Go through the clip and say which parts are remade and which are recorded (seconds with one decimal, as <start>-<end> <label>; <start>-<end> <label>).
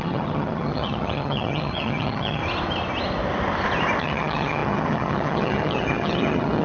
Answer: 0.0-2.4 remade; 2.4-4.0 recorded; 4.0-6.6 remade